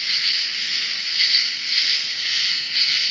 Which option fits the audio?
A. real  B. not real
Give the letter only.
B